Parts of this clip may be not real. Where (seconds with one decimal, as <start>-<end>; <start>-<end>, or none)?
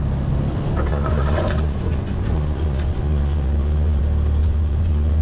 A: 0.9-4.0; 4.4-5.2